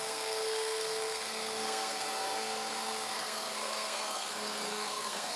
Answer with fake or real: fake